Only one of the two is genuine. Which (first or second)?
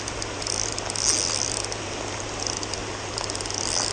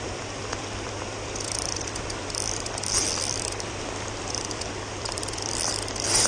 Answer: first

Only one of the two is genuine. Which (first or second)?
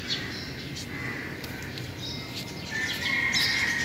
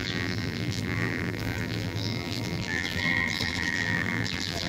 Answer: first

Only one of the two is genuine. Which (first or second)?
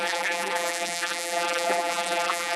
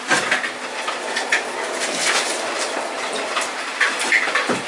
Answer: second